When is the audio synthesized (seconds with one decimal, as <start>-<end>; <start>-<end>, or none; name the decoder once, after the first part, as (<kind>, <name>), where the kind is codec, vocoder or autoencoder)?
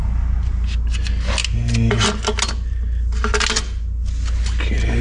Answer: none